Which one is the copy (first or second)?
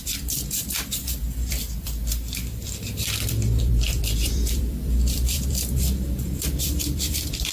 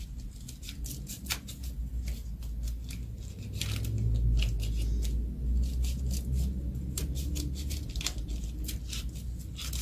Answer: first